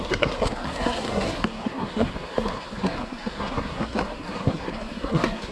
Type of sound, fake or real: fake